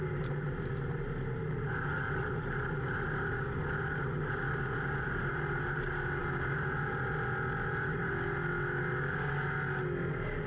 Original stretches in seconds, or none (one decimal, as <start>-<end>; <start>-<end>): 0.0-10.5